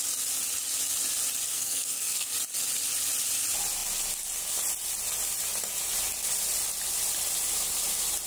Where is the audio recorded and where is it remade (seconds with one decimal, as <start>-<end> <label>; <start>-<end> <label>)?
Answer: 0.0-1.5 recorded; 1.5-2.3 remade; 2.3-8.3 recorded